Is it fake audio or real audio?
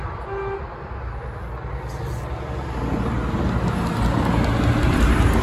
real